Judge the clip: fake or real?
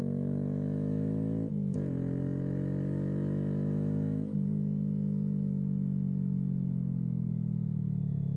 fake